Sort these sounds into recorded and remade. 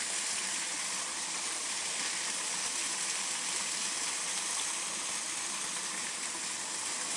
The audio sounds recorded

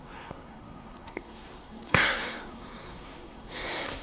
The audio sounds remade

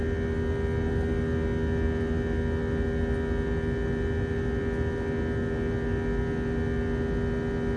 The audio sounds recorded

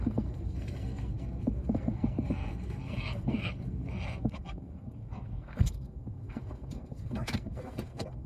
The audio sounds remade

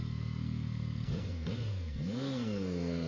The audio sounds remade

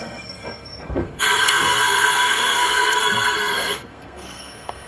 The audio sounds remade